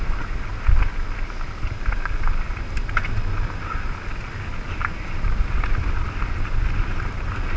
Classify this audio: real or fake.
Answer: real